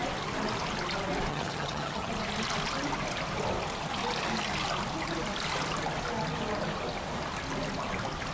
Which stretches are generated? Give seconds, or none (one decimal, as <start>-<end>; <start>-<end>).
1.3-2.1